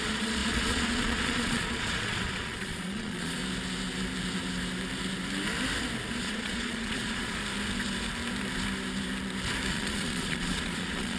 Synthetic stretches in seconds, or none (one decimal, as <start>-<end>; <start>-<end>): 0.0-3.4; 6.2-7.4; 9.7-11.2